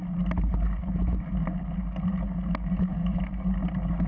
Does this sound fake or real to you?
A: real